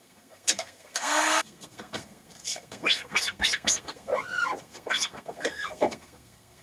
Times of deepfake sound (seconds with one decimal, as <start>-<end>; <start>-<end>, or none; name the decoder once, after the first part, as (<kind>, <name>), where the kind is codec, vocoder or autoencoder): 0.0-4.1 (codec, SNAC); 4.6-6.6